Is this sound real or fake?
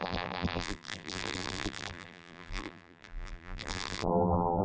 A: fake